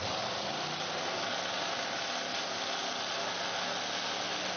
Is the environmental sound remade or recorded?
recorded